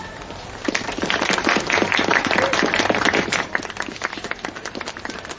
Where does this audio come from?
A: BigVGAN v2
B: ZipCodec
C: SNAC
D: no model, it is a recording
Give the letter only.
A